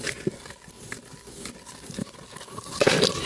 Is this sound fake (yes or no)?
no